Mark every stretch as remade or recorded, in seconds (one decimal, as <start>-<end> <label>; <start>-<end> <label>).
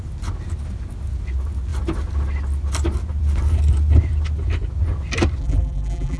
0.0-5.4 recorded; 5.4-6.2 remade